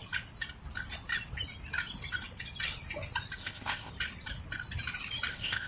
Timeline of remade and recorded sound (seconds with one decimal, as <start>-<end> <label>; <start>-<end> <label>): 0.0-3.4 recorded; 3.4-3.9 remade; 3.9-5.3 recorded; 5.3-5.7 remade